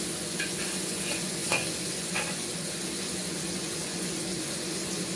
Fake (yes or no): yes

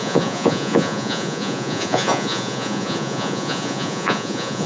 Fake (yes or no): yes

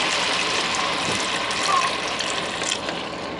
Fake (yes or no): no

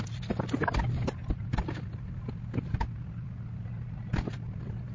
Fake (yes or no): no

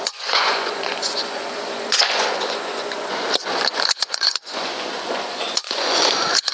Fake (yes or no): yes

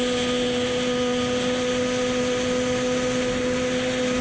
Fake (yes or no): no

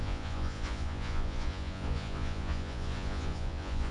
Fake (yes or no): yes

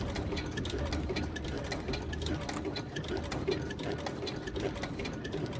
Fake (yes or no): no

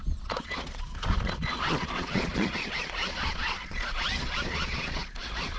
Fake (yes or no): yes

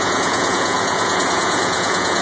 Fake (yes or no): yes